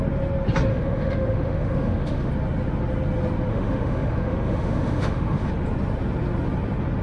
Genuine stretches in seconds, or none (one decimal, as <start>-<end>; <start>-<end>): 0.0-0.7; 2.3-3.5; 5.5-7.0

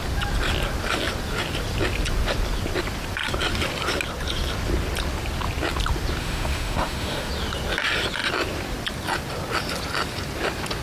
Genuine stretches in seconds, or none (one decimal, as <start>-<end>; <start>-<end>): 0.0-6.2; 7.3-10.8

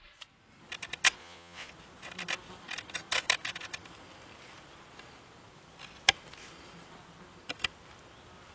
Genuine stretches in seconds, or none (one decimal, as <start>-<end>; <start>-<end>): 0.0-1.2; 1.7-8.5

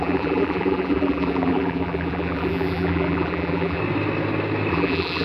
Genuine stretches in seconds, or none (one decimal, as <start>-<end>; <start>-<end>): 3.8-4.7

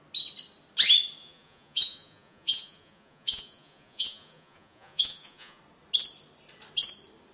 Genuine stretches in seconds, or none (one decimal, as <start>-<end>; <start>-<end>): 0.0-1.2; 5.6-7.3

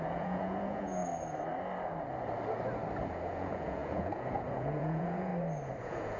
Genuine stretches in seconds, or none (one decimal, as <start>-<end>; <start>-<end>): 1.0-3.1; 5.3-5.8

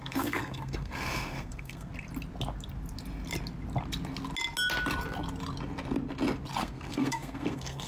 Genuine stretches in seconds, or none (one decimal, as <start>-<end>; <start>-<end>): 1.9-6.6

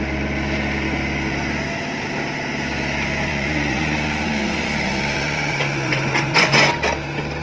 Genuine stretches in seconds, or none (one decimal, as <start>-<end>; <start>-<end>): 0.0-3.3; 6.7-7.4